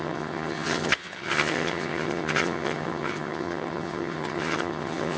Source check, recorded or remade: remade